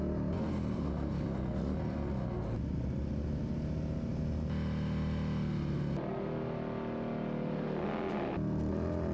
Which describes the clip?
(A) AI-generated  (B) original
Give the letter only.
B